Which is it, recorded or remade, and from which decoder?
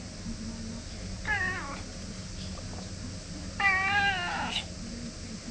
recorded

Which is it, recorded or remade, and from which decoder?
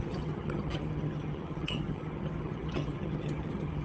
remade, vocoder, HiFi-GAN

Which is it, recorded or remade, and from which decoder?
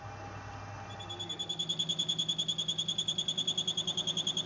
recorded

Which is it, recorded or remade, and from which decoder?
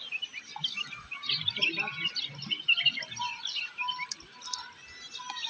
recorded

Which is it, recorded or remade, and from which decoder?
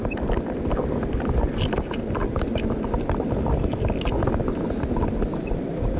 recorded